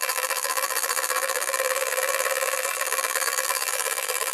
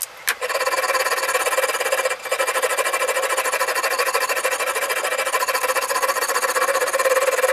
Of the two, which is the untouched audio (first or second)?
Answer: second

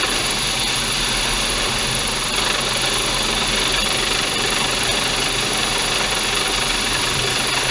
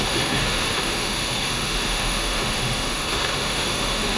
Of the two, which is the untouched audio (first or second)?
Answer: first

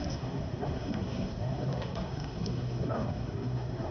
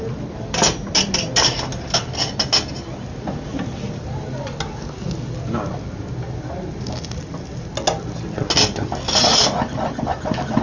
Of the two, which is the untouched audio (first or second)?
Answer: second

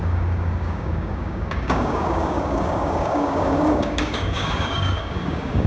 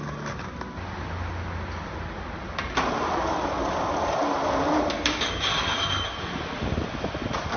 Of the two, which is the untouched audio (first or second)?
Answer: second